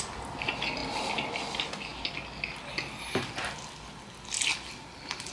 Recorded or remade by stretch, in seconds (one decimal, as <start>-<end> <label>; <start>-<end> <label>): 0.0-5.3 recorded